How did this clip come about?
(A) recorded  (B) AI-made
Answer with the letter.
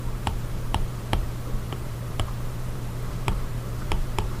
B